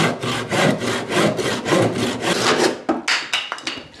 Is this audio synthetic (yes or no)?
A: no